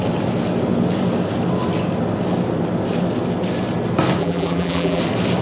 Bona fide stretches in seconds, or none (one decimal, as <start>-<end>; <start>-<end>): 0.0-4.2; 5.0-5.4